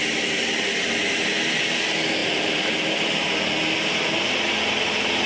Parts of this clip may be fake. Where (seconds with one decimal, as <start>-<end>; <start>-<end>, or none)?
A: none